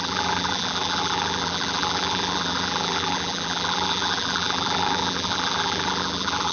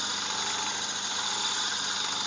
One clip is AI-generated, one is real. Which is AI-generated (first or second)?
first